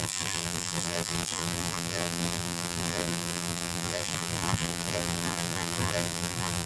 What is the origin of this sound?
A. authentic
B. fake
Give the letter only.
B